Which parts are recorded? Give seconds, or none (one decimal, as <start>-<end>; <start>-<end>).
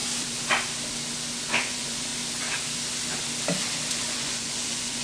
0.0-1.5; 2.1-3.9